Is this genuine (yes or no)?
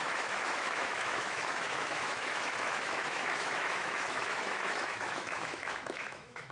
no